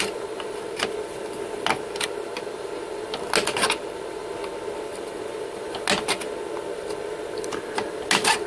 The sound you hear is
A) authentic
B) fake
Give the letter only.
A